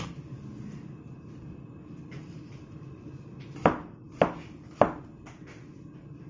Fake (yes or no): no